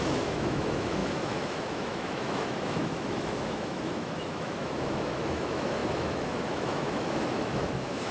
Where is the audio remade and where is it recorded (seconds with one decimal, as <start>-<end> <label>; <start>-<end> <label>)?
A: 0.0-8.1 remade